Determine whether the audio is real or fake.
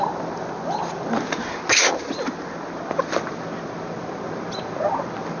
real